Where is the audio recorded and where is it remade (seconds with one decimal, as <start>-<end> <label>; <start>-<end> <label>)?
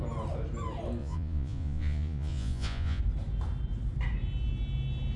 0.0-1.0 recorded; 1.0-3.0 remade; 3.0-5.2 recorded